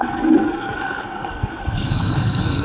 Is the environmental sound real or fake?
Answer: fake